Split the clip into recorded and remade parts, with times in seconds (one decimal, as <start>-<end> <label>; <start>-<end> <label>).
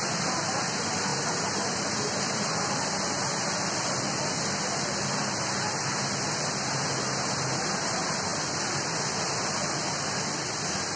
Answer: 0.0-11.0 recorded